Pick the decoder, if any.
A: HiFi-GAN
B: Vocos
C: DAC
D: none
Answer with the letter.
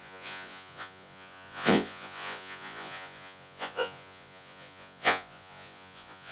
B